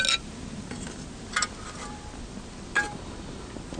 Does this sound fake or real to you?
real